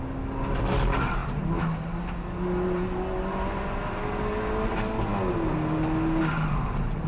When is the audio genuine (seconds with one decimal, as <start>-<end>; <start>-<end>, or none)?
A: 0.0-7.1